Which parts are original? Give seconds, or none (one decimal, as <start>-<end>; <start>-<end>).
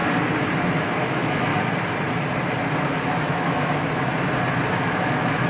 0.0-0.7; 1.5-3.2; 4.1-4.7